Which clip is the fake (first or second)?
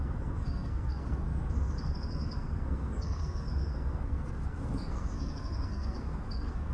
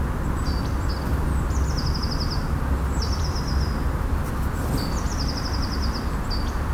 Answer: first